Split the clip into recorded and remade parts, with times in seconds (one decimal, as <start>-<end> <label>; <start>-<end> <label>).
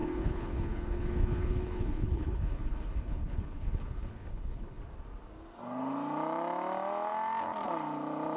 0.0-4.8 remade; 4.8-8.4 recorded